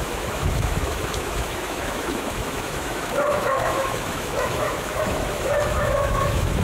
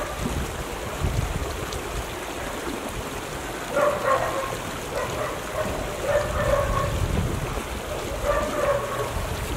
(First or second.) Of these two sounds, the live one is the second